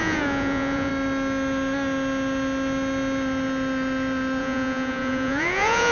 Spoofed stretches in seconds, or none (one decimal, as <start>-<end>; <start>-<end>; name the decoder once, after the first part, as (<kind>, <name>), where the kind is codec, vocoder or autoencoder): 0.0-0.9 (vocoder, Vocos); 4.4-5.9